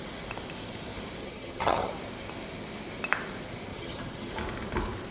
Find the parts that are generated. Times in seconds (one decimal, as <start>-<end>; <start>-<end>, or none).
1.2-1.9; 3.7-4.3